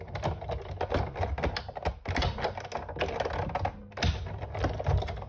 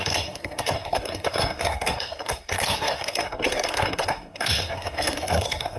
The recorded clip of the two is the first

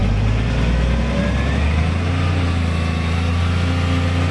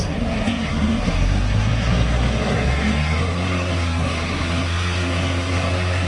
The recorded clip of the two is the first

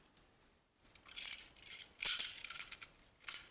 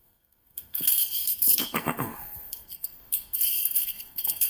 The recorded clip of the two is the first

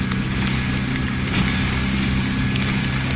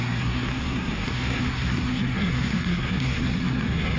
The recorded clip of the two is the first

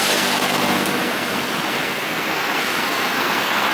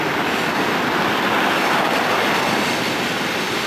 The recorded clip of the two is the second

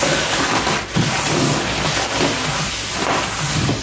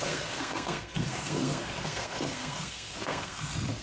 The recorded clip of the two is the first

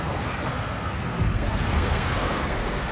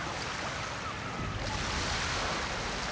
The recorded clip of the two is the second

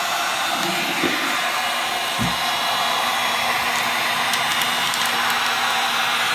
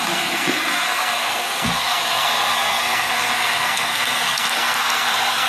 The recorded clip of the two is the first